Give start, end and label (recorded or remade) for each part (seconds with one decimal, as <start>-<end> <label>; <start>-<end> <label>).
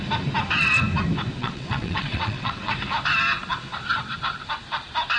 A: 0.0-1.4 recorded; 1.4-2.7 remade; 2.7-5.2 recorded